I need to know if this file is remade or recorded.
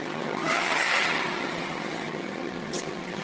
remade